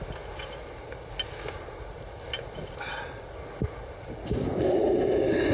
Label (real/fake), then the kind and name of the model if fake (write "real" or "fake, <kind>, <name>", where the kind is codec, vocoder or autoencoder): real